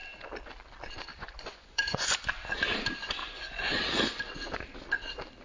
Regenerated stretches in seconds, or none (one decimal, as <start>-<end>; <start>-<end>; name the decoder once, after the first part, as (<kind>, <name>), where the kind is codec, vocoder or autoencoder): 1.1-2.2 (vocoder, Vocos); 3.2-3.8